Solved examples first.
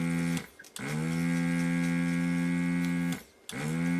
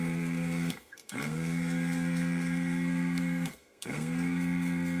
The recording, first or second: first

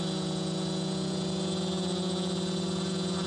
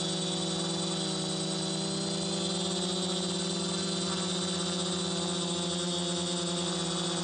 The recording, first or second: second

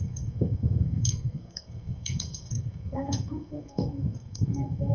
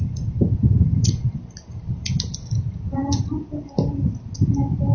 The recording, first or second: second